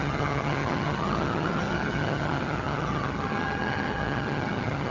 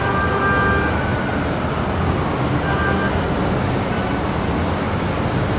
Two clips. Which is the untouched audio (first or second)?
second